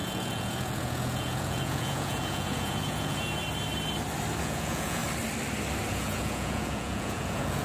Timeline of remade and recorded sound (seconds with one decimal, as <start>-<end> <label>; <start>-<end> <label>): 0.0-3.4 remade; 3.4-4.4 recorded; 4.4-5.0 remade; 5.0-5.9 recorded; 5.9-7.6 remade